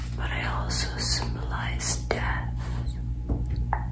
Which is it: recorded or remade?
recorded